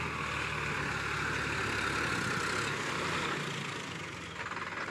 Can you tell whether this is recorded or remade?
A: recorded